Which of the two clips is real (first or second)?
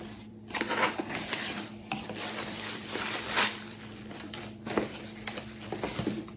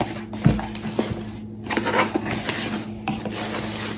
second